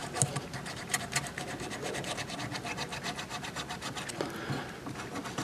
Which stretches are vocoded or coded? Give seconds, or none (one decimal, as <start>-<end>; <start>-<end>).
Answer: none